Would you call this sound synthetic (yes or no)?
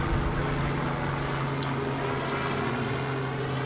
no